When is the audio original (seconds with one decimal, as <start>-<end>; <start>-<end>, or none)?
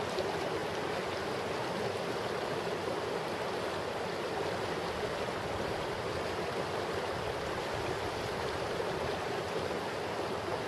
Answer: 0.6-4.0